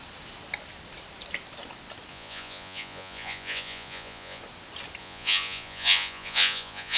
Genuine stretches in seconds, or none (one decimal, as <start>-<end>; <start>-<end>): 0.0-2.1; 4.4-5.0